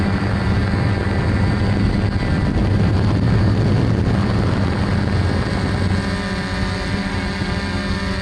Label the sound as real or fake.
real